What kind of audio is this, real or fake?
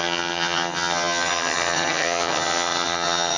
fake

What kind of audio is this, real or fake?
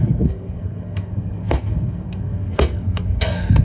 fake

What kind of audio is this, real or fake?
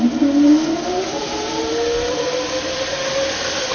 real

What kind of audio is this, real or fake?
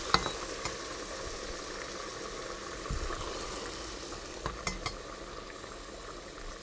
real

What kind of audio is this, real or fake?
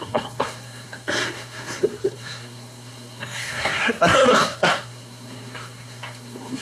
fake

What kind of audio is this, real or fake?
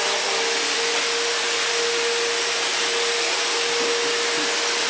real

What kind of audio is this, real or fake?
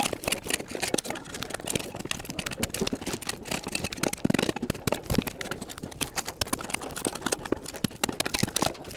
real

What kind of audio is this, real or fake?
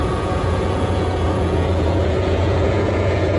fake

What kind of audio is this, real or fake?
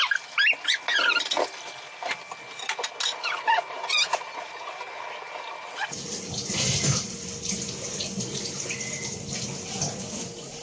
real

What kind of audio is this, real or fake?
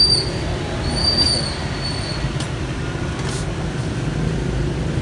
real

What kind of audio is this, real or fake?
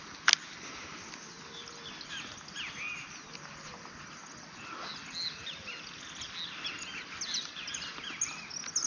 real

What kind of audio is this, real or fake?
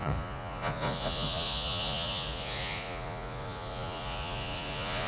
fake